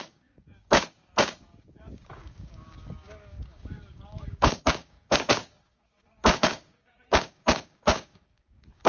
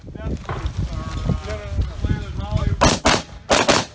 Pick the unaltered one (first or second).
second